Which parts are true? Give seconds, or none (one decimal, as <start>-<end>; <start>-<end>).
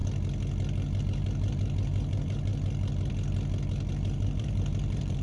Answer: 0.0-1.0; 2.5-3.9